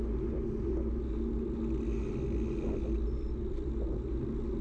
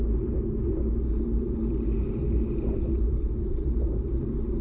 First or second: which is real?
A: first